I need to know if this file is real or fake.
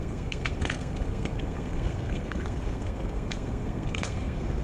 fake